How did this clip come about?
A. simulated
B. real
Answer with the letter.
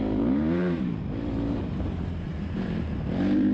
A